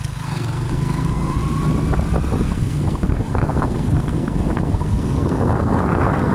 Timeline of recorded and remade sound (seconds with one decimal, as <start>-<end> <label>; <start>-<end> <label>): 0.0-1.4 remade; 1.4-2.4 recorded; 2.4-6.3 remade